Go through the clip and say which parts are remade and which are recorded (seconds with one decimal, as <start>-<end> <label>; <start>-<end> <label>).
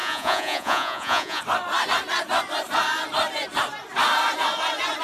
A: 0.0-1.4 remade; 1.4-5.0 recorded